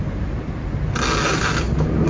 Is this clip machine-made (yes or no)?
no